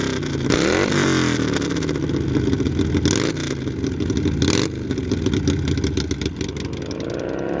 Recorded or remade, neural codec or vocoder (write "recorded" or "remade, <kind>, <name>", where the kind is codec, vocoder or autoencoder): recorded